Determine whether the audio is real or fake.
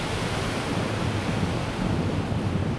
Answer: real